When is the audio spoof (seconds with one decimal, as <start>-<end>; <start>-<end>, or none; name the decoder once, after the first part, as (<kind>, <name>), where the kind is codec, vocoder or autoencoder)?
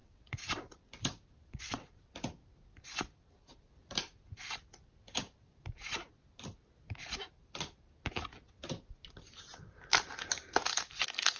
0.0-0.6 (vocoder, WaveNeXt); 1.5-2.0